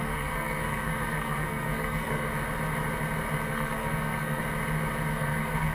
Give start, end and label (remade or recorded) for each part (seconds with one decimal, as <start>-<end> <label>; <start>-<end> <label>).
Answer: 0.0-2.3 remade; 2.3-3.5 recorded; 3.5-4.4 remade; 4.4-5.1 recorded; 5.1-5.7 remade